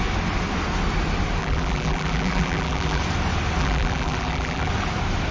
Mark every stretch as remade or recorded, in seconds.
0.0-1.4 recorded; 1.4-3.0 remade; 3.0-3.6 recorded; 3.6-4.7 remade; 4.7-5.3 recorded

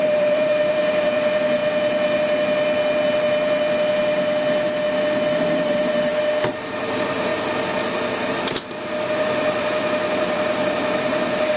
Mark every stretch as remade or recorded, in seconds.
0.0-1.6 remade; 1.6-5.4 recorded; 5.4-6.1 remade; 6.1-6.8 recorded; 6.8-7.3 remade; 7.3-8.3 recorded; 8.3-11.6 remade

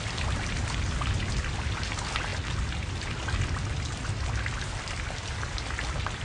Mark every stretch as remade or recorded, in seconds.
0.0-6.2 recorded